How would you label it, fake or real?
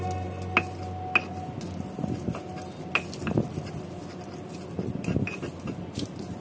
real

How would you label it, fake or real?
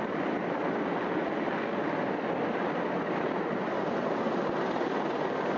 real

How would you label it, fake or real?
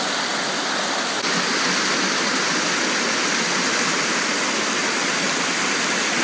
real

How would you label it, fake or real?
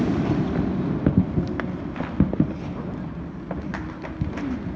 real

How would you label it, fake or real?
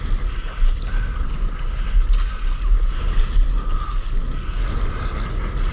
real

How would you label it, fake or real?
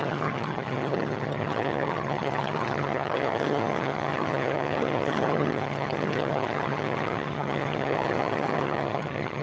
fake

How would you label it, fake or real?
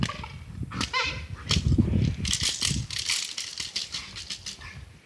real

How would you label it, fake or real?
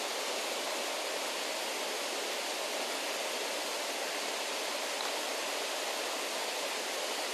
real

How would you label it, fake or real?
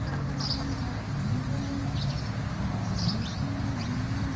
real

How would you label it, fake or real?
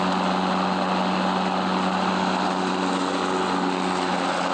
real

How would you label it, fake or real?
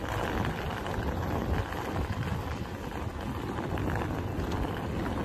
real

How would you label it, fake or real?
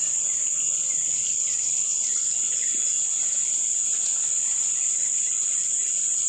real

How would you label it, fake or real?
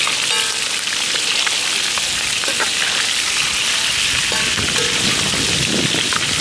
real